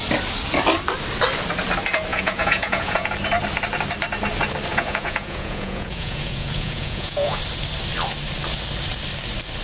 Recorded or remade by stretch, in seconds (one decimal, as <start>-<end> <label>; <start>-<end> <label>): 0.0-2.1 recorded; 2.1-3.1 remade; 3.1-4.7 recorded; 4.7-7.4 remade; 7.4-9.6 recorded